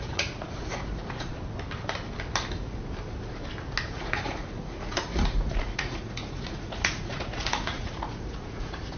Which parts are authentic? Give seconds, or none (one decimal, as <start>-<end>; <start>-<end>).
1.3-3.9